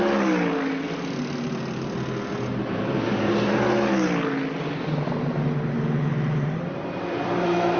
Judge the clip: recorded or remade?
recorded